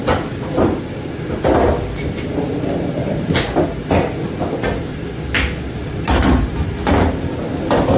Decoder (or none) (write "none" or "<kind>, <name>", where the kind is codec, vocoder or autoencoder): none